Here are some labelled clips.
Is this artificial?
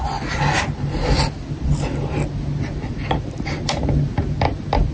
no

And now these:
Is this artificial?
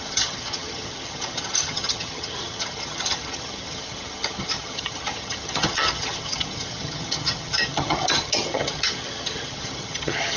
yes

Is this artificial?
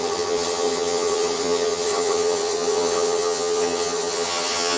yes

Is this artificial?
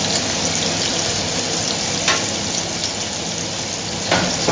no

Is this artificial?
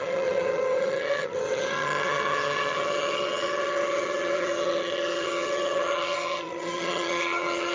yes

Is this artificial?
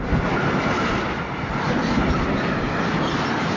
no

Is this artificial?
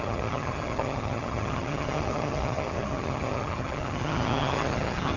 yes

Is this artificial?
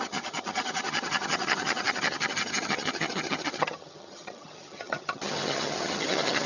yes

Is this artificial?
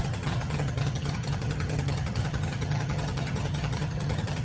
yes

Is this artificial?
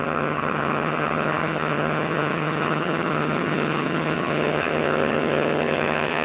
yes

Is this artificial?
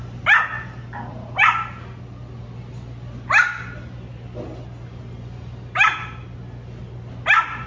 no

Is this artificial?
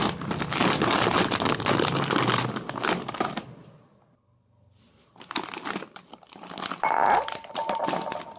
no